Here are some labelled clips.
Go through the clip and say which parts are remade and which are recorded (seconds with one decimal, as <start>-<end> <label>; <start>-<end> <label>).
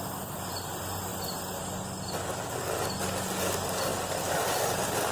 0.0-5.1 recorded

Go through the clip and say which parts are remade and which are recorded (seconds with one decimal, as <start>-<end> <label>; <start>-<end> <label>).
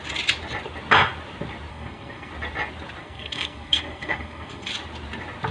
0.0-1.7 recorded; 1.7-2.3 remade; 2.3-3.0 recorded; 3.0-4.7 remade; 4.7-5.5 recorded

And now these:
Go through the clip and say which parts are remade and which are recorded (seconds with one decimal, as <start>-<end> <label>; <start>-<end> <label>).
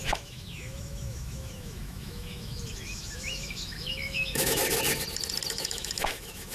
0.0-4.6 remade; 4.6-5.5 recorded; 5.5-6.5 remade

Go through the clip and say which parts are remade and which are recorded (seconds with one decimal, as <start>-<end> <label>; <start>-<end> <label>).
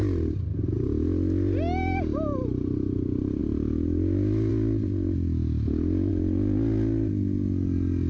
0.0-8.1 recorded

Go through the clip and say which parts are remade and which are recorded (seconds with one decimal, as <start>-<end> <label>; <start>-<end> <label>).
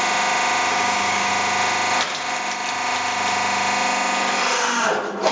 0.0-0.7 recorded; 0.7-1.3 remade; 1.3-5.3 recorded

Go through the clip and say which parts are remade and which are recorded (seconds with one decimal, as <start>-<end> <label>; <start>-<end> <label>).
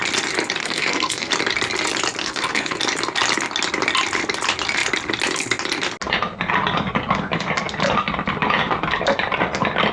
0.0-0.6 recorded; 0.6-1.3 remade; 1.3-2.2 recorded; 2.2-2.8 remade; 2.8-9.9 recorded